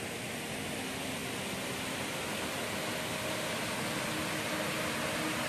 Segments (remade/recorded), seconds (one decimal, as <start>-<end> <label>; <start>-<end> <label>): 0.0-5.5 recorded